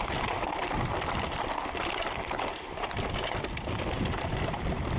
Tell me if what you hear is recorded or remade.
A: recorded